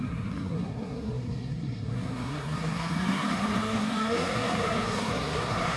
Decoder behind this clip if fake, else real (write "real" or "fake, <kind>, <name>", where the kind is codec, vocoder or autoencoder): fake, codec, SNAC